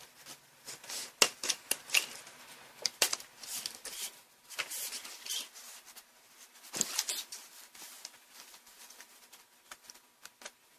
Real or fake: real